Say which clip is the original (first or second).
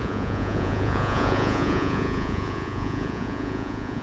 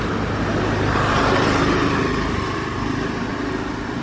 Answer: second